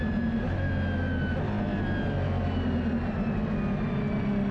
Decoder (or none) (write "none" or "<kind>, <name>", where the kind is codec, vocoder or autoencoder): none